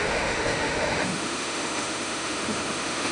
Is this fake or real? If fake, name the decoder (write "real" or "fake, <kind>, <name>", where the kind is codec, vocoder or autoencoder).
fake, autoencoder, DAC-VAE